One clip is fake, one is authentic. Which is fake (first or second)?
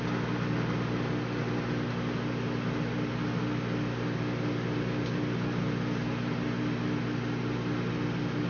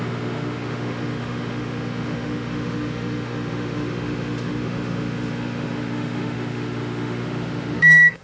second